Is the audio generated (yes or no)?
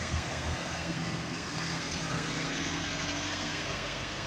yes